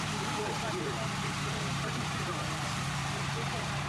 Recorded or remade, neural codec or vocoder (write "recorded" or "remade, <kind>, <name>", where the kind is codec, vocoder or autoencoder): remade, vocoder, BigVGAN v2